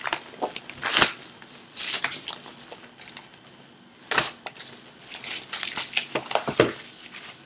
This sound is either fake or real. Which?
real